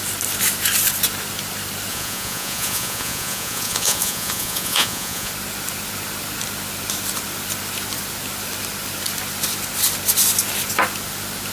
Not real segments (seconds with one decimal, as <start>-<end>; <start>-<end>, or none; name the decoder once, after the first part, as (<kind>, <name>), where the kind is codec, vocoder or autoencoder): 1.9-5.3 (vocoder, Vocos)